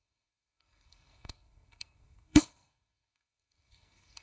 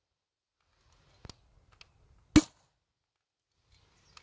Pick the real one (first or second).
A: second